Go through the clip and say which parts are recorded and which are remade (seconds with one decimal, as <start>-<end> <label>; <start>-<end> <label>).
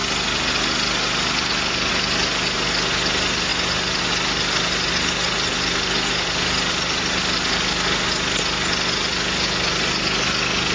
0.0-10.7 recorded